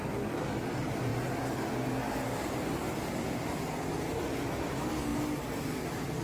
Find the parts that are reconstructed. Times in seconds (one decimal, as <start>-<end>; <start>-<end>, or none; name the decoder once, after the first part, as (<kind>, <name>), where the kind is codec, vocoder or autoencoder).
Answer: 5.1-6.2 (vocoder, BigVGAN v2)